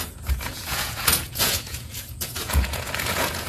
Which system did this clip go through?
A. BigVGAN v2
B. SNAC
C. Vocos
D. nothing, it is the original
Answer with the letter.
C